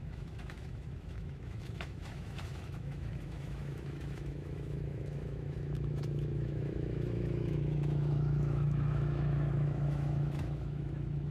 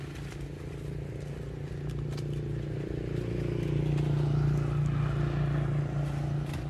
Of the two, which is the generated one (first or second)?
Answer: first